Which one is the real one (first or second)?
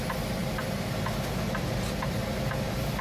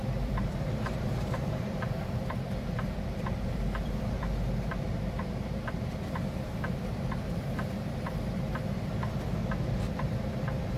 first